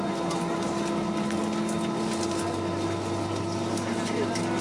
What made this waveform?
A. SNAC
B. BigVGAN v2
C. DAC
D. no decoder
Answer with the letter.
D